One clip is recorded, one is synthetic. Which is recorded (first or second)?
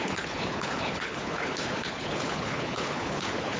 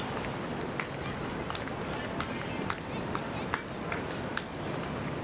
second